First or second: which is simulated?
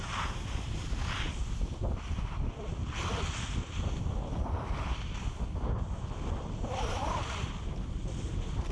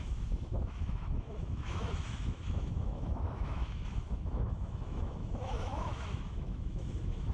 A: second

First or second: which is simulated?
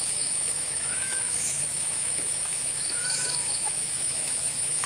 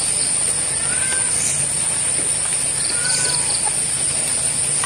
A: first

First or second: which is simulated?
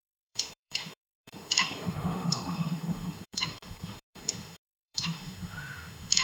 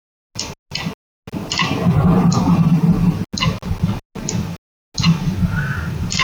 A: first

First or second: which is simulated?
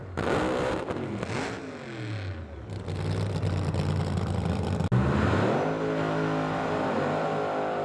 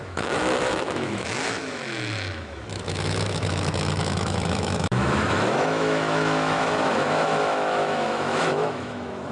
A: second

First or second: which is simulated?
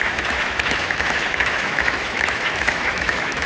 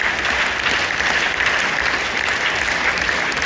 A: first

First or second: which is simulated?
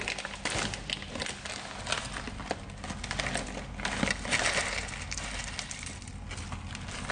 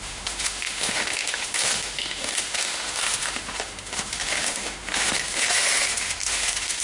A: second